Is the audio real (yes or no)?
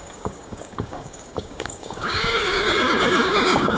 no